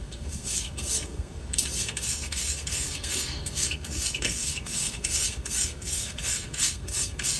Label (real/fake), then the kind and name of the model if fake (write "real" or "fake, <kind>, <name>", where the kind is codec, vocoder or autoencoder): fake, codec, SNAC